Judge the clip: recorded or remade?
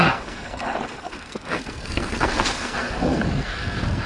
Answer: remade